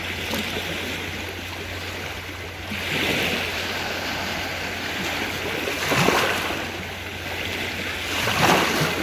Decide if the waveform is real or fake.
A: real